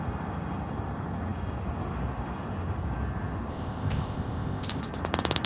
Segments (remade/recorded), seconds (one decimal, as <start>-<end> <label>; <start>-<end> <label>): 0.0-3.5 recorded; 3.5-4.8 remade; 4.8-5.5 recorded